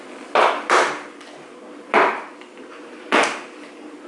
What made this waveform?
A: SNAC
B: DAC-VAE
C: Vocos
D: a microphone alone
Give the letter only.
D